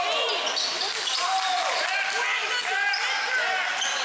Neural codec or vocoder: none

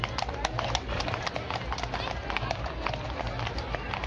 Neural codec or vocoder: none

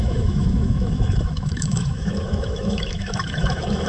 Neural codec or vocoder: autoencoder, DAC-VAE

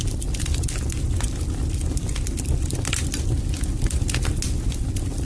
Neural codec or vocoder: none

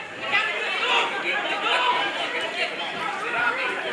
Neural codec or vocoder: vocoder, BigVGAN v2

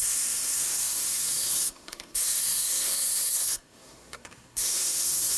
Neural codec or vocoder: codec, SNAC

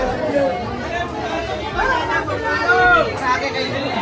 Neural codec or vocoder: none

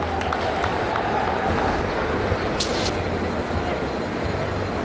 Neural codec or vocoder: none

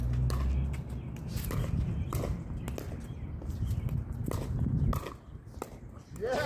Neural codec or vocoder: none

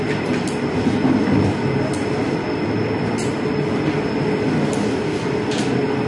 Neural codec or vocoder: none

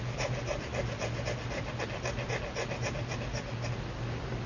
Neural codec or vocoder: none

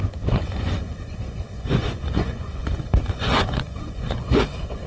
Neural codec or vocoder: vocoder, Vocos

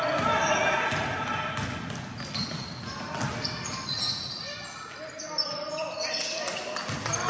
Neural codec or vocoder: none